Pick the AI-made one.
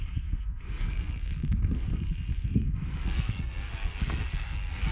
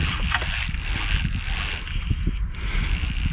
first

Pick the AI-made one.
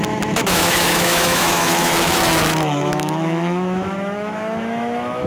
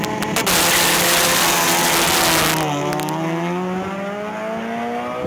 first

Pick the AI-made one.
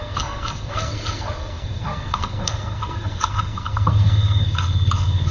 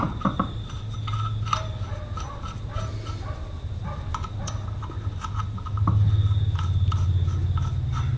first